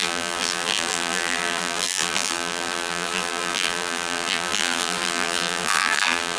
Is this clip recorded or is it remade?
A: remade